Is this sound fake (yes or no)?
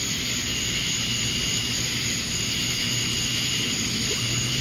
no